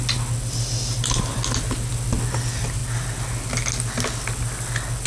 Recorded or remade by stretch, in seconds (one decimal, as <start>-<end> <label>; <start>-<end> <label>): 0.0-5.1 recorded